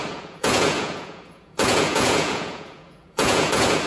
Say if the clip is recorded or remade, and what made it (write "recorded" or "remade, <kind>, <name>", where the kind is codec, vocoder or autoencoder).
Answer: remade, vocoder, Vocos